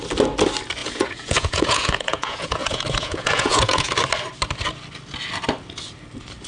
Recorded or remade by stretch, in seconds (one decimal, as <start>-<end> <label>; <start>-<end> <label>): 0.0-0.8 recorded; 0.8-3.9 remade; 3.9-6.5 recorded